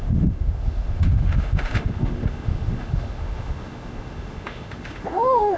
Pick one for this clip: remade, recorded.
remade